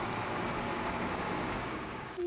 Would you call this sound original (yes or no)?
no